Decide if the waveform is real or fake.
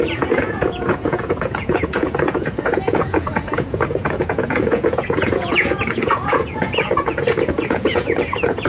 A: fake